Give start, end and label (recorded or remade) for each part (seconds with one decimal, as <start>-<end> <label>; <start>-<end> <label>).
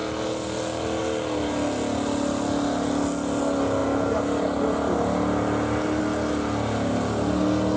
0.0-7.8 recorded